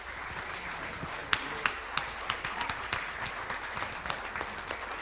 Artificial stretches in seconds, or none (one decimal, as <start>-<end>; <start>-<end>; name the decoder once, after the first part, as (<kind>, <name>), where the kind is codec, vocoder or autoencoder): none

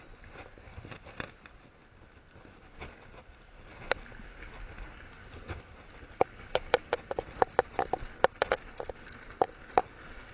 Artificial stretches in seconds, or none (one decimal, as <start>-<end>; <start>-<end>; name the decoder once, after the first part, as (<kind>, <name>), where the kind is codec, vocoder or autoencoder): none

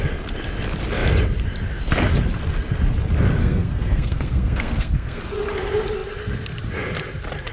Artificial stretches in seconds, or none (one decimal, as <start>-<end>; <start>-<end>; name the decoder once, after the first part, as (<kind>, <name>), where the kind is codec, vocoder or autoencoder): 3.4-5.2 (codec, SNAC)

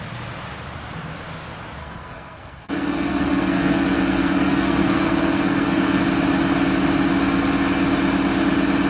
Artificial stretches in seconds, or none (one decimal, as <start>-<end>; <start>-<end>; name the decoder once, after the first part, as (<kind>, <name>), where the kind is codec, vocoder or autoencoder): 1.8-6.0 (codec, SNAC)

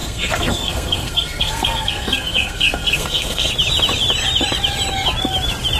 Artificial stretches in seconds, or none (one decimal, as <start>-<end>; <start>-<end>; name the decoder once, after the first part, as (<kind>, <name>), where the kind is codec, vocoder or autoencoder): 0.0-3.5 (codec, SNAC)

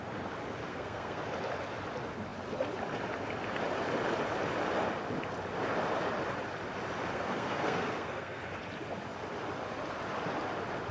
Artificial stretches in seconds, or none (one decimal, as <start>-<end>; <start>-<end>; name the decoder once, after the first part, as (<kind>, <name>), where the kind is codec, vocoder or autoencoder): 0.7-1.2 (codec, SNAC); 7.1-8.4